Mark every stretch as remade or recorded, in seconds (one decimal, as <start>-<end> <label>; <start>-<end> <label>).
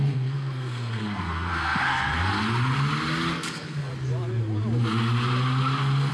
0.0-2.3 remade; 2.3-3.3 recorded; 3.3-3.9 remade; 3.9-6.1 recorded